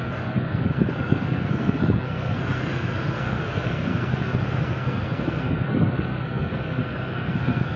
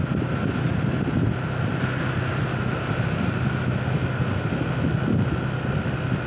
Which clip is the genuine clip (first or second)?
second